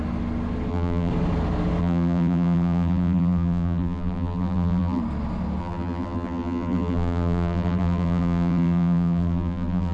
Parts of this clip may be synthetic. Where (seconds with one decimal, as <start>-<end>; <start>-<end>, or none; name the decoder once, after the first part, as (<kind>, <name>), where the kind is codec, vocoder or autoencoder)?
0.7-1.1 (vocoder, BigVGAN v2); 1.8-5.0; 5.6-9.9